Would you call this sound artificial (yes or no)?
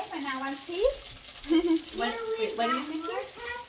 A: no